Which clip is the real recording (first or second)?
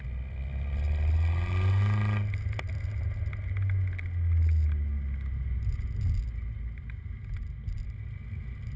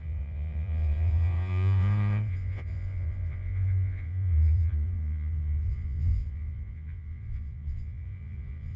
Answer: first